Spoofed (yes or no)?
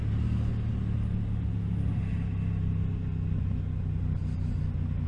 no